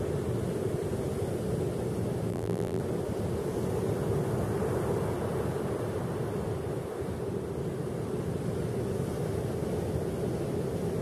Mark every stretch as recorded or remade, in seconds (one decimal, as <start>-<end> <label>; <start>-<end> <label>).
0.0-2.3 recorded; 2.3-2.8 remade; 2.8-11.0 recorded